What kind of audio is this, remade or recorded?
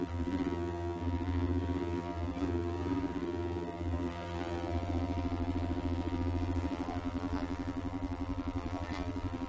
remade